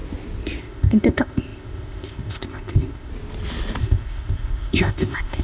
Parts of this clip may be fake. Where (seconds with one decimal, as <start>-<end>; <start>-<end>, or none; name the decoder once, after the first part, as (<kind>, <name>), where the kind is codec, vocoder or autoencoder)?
0.6-3.1 (codec, ZipCodec); 3.8-5.4